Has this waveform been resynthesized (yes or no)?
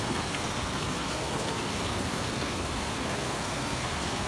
yes